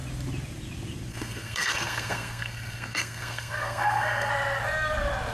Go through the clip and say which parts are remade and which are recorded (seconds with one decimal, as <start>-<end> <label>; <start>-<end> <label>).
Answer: 0.0-1.1 recorded; 1.1-4.3 remade; 4.3-5.3 recorded

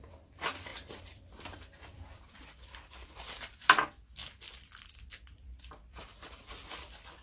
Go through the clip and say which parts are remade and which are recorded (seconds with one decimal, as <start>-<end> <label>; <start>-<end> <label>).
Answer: 0.0-0.7 recorded; 0.7-2.9 remade; 2.9-5.8 recorded; 5.8-6.4 remade; 6.4-7.2 recorded

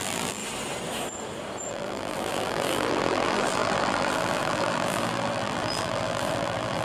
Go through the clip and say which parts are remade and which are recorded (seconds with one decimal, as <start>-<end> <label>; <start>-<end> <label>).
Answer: 0.0-0.4 remade; 0.4-1.7 recorded; 1.7-6.8 remade

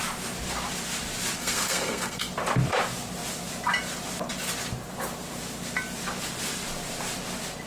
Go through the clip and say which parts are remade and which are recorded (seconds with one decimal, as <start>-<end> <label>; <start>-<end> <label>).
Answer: 0.0-1.4 recorded; 1.4-2.3 remade; 2.3-7.7 recorded

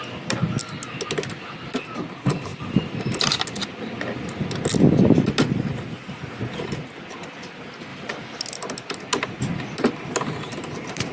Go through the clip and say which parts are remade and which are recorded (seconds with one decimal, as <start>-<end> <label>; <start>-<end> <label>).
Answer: 0.0-2.5 recorded; 2.5-3.4 remade; 3.4-7.9 recorded; 7.9-8.4 remade; 8.4-11.1 recorded

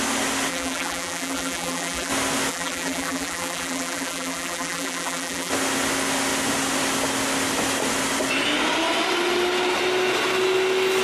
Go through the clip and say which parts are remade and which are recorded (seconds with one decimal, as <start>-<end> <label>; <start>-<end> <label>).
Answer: 0.0-0.5 recorded; 0.5-2.1 remade; 2.1-2.5 recorded; 2.5-5.5 remade; 5.5-11.0 recorded